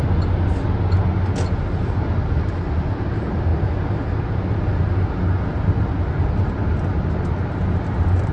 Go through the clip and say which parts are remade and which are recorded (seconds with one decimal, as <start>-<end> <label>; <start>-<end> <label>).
0.0-8.3 recorded